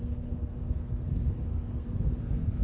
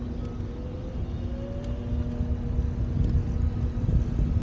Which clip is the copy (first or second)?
first